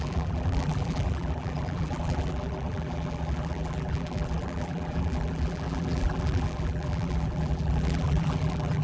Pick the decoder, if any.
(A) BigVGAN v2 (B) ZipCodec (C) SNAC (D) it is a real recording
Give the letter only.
A